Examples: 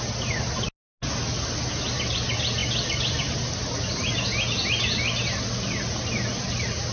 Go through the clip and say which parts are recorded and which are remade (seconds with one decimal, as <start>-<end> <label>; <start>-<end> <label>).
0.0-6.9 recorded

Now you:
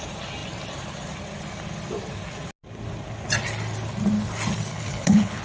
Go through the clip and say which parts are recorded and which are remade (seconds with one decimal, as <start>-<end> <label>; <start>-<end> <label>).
0.0-4.7 recorded; 4.7-5.4 remade

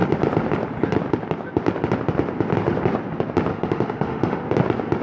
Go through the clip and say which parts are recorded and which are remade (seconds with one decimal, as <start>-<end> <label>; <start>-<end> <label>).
0.0-3.5 recorded; 3.5-4.4 remade; 4.4-5.0 recorded